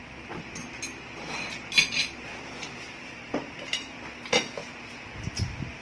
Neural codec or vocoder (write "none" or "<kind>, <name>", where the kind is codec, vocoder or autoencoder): none